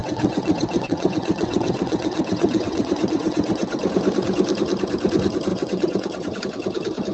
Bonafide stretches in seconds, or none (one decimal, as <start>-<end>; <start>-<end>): 3.8-5.5; 6.4-7.1